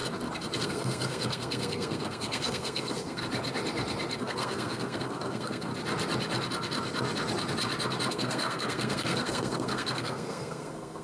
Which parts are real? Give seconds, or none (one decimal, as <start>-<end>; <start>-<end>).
0.0-0.6; 3.2-4.2; 5.7-8.1